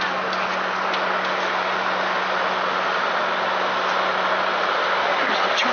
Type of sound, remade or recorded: recorded